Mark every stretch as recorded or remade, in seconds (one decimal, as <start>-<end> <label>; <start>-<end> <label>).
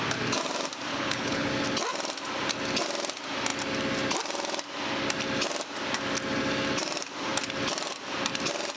0.0-0.9 recorded; 0.9-1.5 remade; 1.5-8.8 recorded